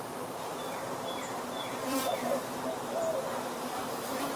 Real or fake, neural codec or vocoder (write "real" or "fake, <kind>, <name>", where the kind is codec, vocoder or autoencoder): fake, vocoder, BigVGAN v2